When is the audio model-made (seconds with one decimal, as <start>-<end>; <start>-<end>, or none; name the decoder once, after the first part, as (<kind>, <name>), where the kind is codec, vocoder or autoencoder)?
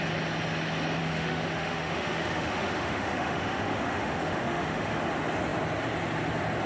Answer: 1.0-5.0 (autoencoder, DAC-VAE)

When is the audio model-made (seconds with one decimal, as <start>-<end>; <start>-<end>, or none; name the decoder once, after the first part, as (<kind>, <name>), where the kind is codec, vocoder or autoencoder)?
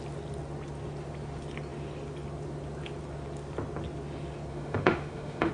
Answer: 4.5-5.5 (autoencoder, DAC-VAE)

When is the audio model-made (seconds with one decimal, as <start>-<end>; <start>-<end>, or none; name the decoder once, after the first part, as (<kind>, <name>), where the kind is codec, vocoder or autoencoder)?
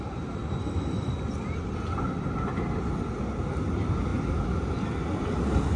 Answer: 0.6-1.1 (autoencoder, DAC-VAE)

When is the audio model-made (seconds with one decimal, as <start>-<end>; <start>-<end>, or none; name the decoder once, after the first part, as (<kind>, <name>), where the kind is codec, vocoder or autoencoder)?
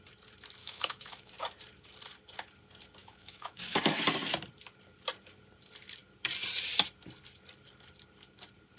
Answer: 0.6-1.3 (autoencoder, DAC-VAE); 3.0-3.8